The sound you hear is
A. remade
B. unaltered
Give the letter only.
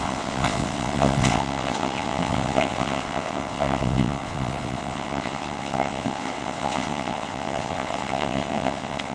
A